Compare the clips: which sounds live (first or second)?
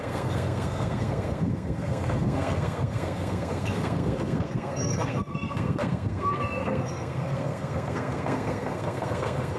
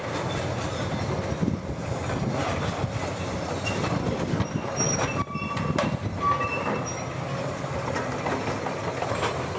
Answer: second